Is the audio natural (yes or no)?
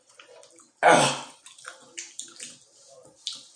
yes